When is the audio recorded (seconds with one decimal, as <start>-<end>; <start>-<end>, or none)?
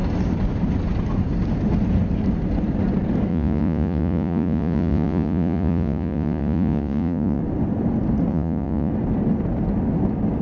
0.0-3.3; 7.4-8.3; 8.9-10.4